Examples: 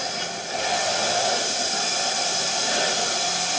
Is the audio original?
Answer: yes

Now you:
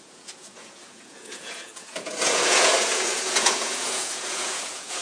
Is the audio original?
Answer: no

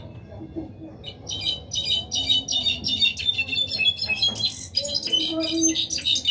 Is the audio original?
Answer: yes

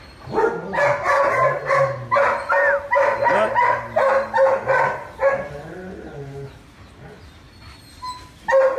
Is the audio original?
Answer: yes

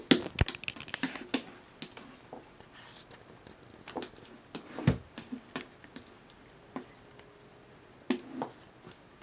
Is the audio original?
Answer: yes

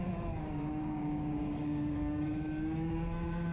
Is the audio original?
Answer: no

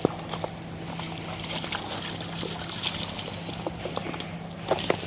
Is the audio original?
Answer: yes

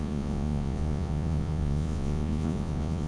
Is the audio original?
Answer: no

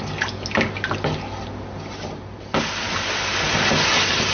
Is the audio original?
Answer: yes